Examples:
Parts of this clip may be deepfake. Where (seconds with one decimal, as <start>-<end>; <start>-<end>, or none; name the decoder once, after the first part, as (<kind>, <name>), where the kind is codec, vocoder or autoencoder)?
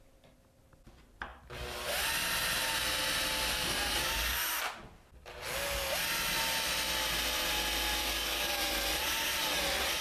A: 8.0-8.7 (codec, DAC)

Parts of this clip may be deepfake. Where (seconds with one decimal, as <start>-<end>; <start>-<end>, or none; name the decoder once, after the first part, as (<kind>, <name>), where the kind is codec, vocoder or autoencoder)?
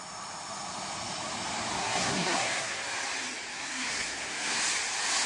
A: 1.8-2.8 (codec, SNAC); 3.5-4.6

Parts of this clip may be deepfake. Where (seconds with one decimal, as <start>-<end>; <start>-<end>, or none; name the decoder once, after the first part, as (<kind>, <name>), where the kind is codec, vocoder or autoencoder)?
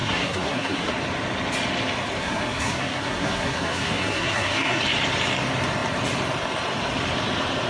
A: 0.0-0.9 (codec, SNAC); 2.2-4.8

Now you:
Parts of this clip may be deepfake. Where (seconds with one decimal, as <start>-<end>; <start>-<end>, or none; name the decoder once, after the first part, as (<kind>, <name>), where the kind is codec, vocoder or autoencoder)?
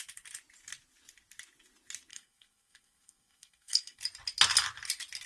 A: 2.1-4.0 (codec, SNAC)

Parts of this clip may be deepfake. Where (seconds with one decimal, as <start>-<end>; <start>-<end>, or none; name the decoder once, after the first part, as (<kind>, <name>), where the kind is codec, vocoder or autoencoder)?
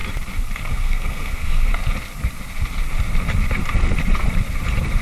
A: 0.7-1.7 (codec, SNAC)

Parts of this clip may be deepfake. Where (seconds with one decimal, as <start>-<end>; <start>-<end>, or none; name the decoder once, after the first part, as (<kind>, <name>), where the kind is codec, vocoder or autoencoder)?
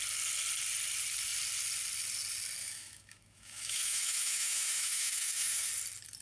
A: 2.6-5.7 (autoencoder, DAC-VAE)